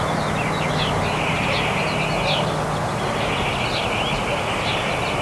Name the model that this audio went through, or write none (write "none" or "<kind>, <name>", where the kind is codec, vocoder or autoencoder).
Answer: none